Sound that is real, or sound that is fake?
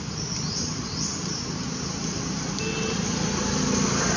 real